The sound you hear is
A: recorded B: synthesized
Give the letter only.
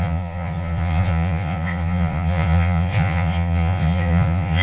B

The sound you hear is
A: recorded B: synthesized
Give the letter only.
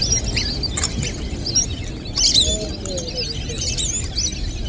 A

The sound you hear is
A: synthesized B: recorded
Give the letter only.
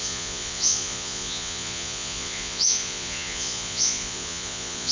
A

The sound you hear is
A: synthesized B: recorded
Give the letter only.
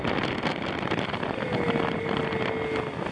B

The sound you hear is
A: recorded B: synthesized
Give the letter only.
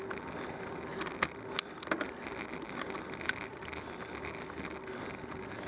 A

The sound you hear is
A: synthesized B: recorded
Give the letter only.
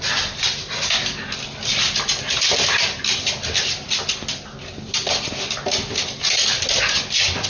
B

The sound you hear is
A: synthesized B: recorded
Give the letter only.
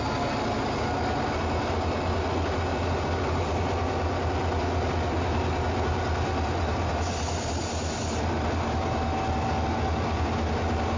B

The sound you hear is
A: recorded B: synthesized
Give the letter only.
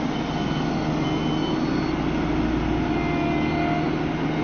A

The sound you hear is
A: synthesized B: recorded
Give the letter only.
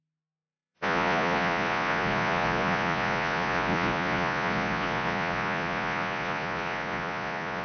A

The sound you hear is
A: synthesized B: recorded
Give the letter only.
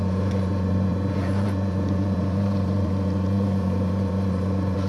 A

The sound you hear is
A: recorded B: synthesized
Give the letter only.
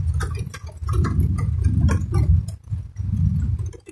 A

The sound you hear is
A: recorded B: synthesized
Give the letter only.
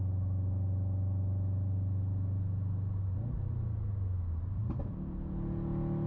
A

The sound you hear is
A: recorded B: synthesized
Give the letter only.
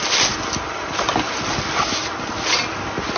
A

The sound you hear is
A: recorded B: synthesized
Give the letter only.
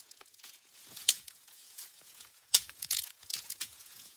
B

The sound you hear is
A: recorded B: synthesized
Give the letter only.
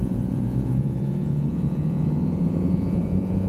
B